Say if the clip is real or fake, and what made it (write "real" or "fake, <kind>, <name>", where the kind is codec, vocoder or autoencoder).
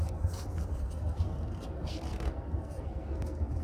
fake, codec, SNAC